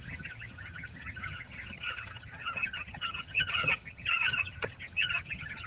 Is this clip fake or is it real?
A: fake